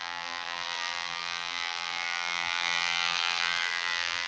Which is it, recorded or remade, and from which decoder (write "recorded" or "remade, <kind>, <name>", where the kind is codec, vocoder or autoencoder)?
remade, vocoder, BigVGAN v2